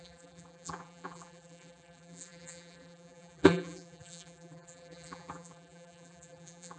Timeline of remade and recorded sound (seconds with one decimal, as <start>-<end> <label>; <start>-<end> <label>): 0.0-6.8 remade